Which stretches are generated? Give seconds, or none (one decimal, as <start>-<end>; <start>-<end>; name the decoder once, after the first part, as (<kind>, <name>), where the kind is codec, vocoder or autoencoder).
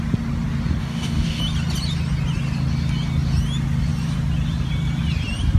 0.8-1.4 (codec, DAC)